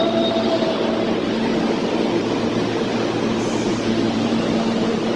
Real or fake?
real